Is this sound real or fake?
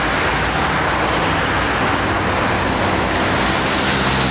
real